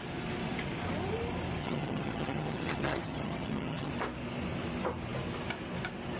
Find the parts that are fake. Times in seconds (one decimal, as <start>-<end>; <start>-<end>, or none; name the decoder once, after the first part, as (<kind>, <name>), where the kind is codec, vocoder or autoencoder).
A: 1.6-3.9 (vocoder, HiFi-GAN)